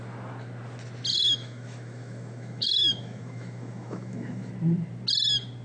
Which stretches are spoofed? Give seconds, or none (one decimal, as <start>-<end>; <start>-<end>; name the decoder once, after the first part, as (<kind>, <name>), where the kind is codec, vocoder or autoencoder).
1.1-4.5 (autoencoder, DAC-VAE)